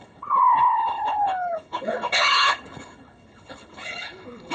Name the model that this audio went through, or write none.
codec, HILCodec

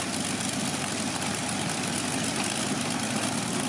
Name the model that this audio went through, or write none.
none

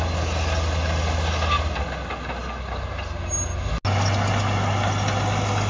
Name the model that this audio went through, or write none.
none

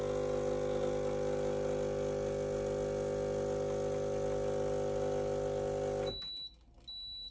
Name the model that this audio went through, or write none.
none